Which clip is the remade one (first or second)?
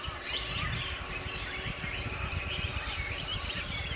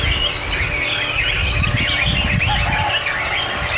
first